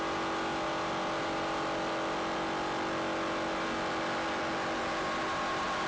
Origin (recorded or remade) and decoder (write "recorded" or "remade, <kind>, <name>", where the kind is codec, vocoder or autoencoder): recorded